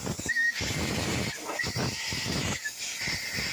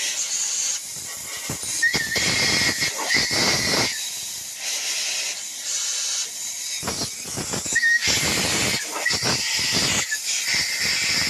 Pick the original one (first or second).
second